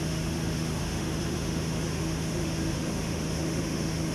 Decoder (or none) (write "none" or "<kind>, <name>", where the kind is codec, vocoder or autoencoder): autoencoder, DAC-VAE